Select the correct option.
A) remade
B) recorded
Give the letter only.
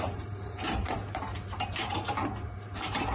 A